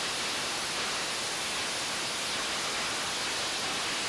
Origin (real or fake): real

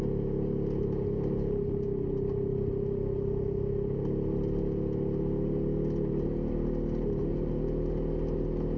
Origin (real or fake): real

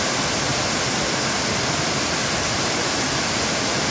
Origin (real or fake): real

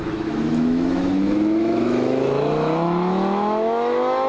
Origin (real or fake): fake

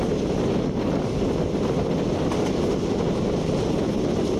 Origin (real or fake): real